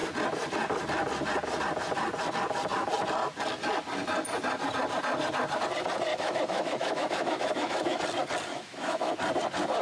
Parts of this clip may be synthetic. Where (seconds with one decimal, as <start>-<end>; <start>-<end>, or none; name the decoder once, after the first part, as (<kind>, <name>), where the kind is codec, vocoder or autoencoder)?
6.1-8.0 (autoencoder, DAC-VAE); 8.5-9.1